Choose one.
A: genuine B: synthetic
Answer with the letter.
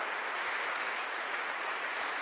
B